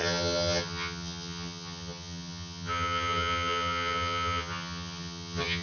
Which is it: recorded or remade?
remade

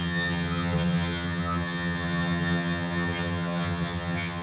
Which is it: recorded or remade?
remade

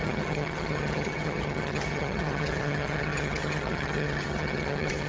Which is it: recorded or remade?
remade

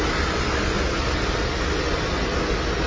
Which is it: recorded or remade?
recorded